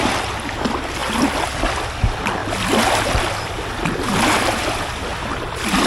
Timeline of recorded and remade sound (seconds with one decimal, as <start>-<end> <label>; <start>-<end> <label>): 0.0-5.9 recorded